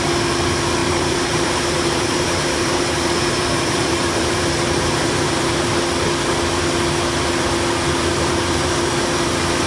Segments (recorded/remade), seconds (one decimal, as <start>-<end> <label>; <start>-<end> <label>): 0.0-0.8 recorded; 0.8-5.7 remade; 5.7-8.0 recorded; 8.0-8.7 remade; 8.7-9.7 recorded